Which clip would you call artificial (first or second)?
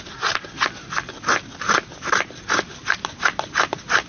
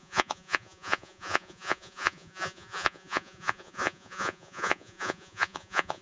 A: second